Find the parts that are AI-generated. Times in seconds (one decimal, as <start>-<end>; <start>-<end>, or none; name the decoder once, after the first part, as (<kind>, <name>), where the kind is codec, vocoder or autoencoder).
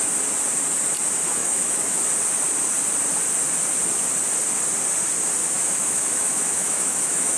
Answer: 1.4-2.0 (autoencoder, DAC-VAE); 5.4-7.4